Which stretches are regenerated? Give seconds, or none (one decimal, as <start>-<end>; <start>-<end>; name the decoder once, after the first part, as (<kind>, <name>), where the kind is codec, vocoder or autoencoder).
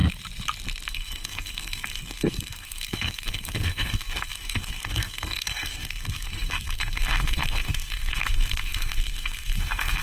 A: 0.9-10.0 (codec, SNAC)